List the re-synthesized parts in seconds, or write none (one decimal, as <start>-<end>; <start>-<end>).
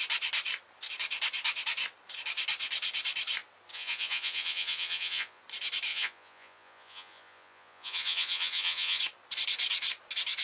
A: 3.7-5.4; 5.9-9.0